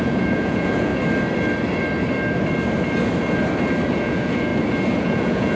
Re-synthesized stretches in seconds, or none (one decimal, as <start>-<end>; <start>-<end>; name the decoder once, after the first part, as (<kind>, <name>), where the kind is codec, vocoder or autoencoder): 0.0-0.9 (vocoder, Vocos); 3.9-4.5; 5.0-5.6